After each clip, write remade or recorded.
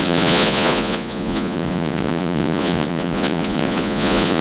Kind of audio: remade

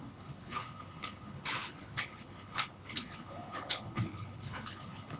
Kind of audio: remade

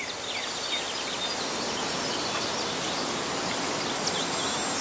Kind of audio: recorded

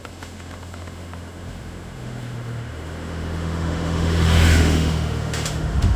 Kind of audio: remade